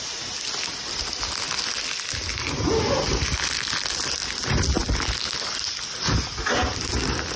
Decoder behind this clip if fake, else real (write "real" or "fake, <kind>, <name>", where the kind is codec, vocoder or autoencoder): real